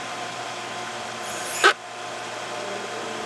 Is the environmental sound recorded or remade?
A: recorded